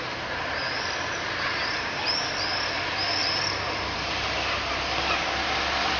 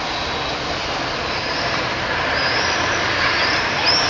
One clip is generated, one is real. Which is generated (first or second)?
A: first